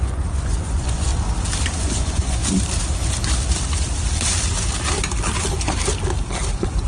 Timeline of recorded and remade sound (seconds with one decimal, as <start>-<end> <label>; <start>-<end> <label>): 0.0-1.1 remade; 1.1-1.8 recorded; 1.8-2.4 remade; 2.4-6.5 recorded; 6.5-6.9 remade